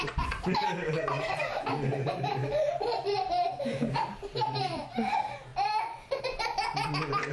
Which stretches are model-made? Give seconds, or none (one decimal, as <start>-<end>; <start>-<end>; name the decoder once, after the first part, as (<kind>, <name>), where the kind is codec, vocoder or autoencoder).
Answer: 0.0-0.9 (vocoder, BigVGAN v2); 1.9-7.3